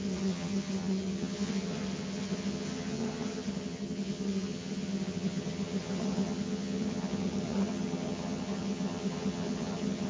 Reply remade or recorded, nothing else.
remade